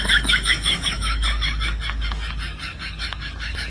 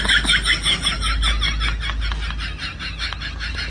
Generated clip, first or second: first